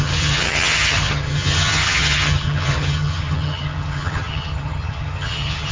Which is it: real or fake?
fake